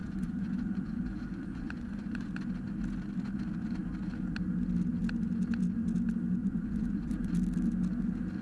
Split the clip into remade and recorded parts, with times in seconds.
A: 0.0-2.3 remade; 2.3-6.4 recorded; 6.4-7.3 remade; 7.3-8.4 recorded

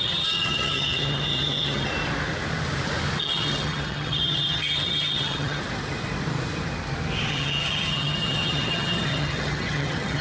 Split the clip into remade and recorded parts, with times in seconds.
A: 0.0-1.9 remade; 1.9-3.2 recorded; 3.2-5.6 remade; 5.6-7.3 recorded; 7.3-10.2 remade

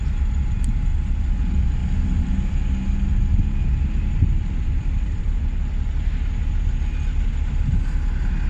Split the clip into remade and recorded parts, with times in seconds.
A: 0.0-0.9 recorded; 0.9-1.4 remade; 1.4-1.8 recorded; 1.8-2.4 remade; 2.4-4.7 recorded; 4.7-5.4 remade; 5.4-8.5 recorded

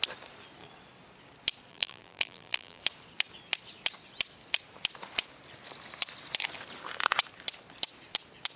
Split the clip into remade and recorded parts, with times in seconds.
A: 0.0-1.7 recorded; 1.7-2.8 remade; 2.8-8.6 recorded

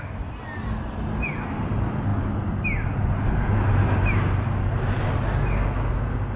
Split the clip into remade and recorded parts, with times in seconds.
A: 0.0-6.4 recorded

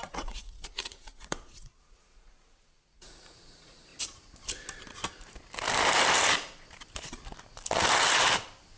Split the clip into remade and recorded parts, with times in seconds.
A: 0.0-3.9 remade; 3.9-8.8 recorded